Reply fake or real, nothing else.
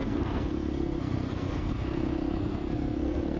fake